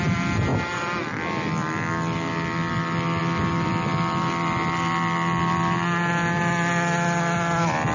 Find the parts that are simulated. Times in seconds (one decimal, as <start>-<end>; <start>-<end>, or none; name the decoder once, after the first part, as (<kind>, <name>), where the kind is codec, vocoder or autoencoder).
none